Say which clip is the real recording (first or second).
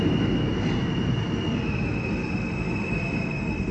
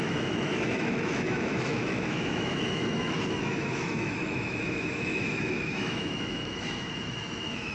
first